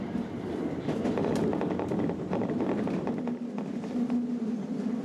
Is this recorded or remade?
recorded